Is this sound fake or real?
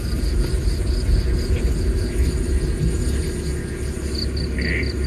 real